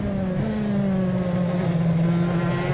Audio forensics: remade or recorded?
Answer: recorded